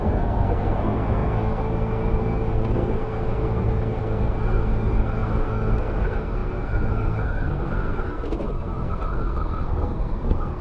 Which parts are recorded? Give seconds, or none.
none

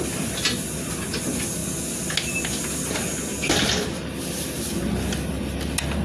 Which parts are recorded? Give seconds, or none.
0.0-6.0

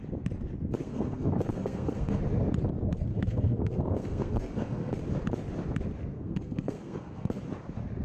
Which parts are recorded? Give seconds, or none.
0.0-0.8; 2.2-3.1; 5.0-6.1; 7.4-8.0

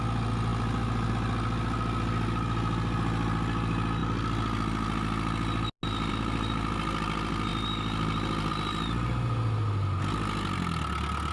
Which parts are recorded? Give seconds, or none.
0.0-11.3

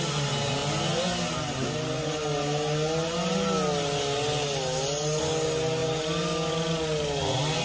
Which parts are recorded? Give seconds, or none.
0.0-7.6